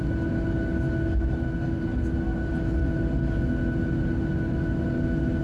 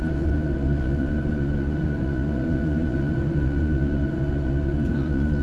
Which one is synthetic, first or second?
second